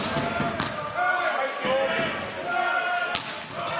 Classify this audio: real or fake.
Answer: real